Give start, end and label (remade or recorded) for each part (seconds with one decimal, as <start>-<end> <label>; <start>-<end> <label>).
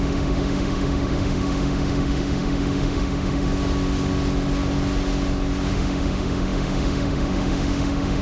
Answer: 0.0-3.5 remade; 3.5-5.7 recorded; 5.7-8.2 remade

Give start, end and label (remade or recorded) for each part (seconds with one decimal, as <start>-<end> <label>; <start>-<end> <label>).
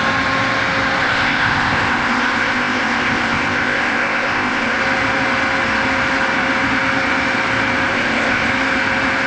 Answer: 0.0-1.0 recorded; 1.0-4.8 remade; 4.8-7.9 recorded; 7.9-8.5 remade; 8.5-9.3 recorded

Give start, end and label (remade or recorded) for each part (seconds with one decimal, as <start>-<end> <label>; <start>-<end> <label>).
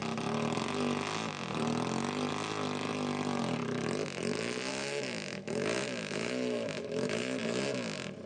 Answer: 0.0-4.7 recorded; 4.7-7.4 remade; 7.4-8.3 recorded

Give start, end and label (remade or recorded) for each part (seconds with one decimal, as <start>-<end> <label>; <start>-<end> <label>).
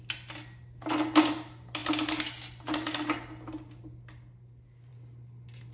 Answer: 0.0-5.7 recorded